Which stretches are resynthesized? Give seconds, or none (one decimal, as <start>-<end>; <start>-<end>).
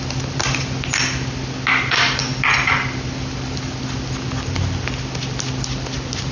none